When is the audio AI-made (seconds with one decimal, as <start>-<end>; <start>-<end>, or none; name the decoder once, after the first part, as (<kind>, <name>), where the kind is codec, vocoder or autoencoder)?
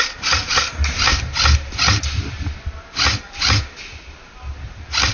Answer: none